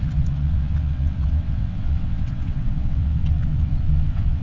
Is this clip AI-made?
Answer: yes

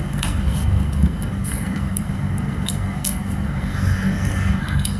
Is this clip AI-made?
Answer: yes